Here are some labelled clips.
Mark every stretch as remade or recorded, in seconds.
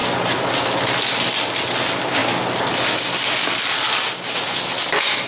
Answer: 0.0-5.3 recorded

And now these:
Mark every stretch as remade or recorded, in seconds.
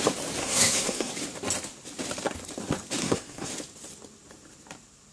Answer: 0.0-0.4 recorded; 0.4-1.1 remade; 1.1-3.0 recorded; 3.0-3.5 remade; 3.5-5.1 recorded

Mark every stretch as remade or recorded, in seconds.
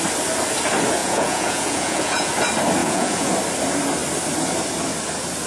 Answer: 0.0-1.0 recorded; 1.0-2.3 remade; 2.3-2.8 recorded; 2.8-3.3 remade; 3.3-5.5 recorded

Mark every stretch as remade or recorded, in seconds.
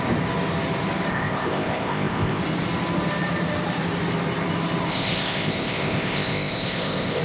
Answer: 0.0-1.1 recorded; 1.1-2.4 remade; 2.4-4.9 recorded; 4.9-7.2 remade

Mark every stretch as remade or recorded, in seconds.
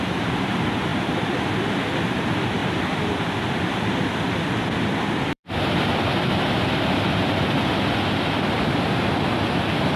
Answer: 0.0-0.9 recorded; 0.9-1.7 remade; 1.7-2.6 recorded; 2.6-5.5 remade; 5.5-10.0 recorded